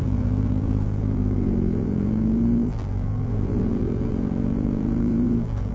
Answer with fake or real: fake